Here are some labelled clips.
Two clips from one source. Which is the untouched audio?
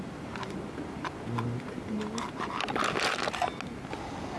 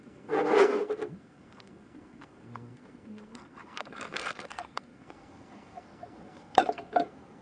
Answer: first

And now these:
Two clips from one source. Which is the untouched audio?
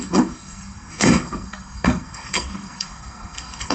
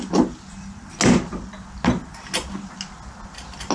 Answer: second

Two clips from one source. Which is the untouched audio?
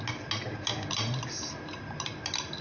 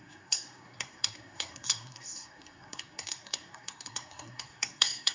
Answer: first